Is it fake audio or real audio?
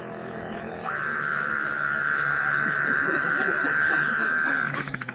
fake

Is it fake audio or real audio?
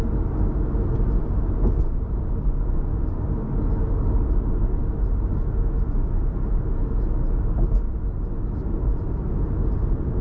real